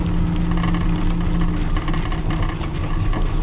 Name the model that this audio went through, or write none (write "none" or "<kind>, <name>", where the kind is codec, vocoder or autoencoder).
none